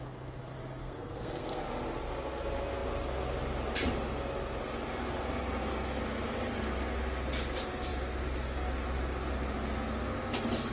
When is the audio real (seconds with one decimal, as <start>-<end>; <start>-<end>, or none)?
0.0-0.8; 1.6-10.7

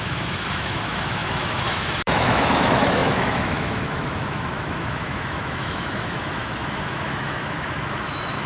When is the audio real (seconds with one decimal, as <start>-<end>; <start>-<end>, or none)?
none

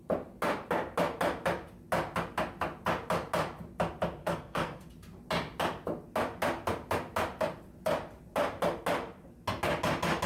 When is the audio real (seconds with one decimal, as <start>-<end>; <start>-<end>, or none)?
0.0-4.2; 4.9-10.3

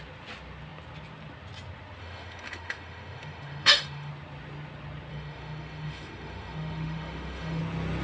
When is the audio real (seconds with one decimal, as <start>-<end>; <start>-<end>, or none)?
0.0-2.0; 4.1-5.1; 7.6-8.0